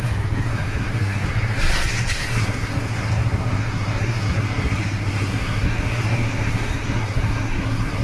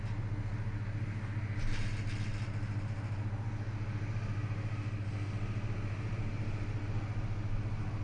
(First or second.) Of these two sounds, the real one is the second